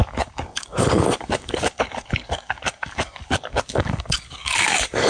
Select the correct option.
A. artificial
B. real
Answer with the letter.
A